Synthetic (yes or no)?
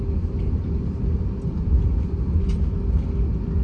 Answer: no